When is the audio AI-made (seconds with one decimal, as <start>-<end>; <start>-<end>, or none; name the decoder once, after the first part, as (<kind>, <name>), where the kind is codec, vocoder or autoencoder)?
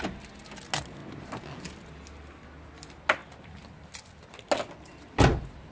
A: none